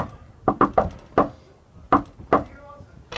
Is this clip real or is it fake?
real